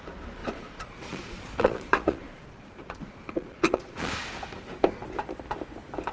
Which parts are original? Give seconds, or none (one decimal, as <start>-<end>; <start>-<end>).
0.0-0.4; 4.1-6.1